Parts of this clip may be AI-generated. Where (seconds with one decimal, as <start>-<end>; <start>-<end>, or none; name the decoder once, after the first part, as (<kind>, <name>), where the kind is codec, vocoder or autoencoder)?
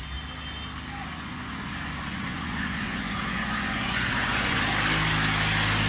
1.1-4.6 (vocoder, Vocos)